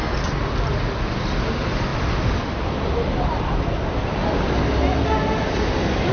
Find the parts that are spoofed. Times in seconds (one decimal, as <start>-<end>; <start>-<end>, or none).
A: none